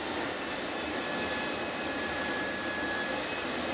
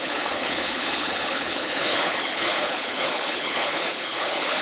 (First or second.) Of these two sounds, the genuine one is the first